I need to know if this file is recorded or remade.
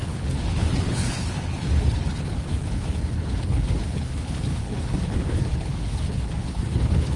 remade